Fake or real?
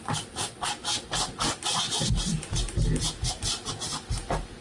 real